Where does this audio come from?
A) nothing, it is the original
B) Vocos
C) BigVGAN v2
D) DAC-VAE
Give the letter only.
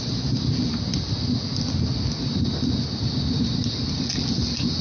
A